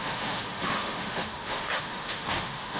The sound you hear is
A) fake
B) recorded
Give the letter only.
A